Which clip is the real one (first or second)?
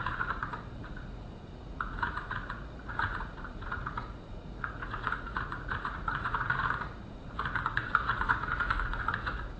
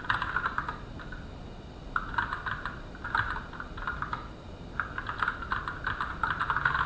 second